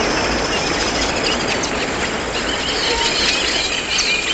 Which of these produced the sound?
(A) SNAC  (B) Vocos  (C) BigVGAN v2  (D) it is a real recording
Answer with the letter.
D